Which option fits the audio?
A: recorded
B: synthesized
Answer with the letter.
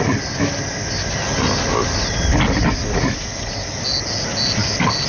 A